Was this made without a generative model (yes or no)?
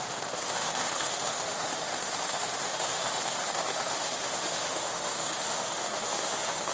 no